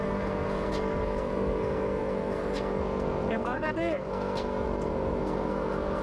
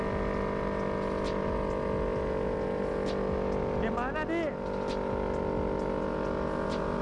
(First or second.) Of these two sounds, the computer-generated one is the first